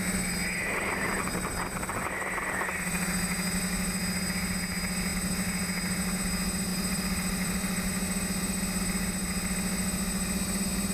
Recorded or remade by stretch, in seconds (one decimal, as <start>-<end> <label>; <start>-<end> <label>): 0.0-6.7 recorded; 6.7-7.9 remade; 7.9-10.9 recorded